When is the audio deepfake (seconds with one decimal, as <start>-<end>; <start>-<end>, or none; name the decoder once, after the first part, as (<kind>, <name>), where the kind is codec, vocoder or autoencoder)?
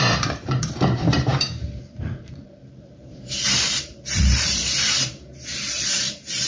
0.0-6.5 (vocoder, BigVGAN v2)